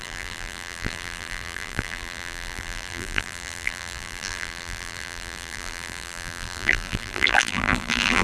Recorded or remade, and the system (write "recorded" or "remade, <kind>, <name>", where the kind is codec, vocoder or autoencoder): remade, vocoder, BigVGAN v2